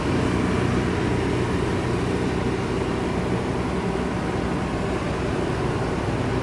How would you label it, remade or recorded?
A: recorded